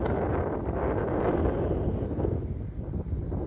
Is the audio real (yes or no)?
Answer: yes